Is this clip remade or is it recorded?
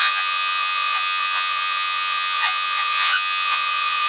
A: remade